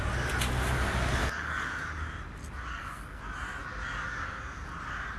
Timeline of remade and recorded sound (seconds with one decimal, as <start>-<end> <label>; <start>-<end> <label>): 0.0-1.2 recorded; 1.2-1.7 remade; 1.7-2.7 recorded; 2.7-3.2 remade; 3.2-5.2 recorded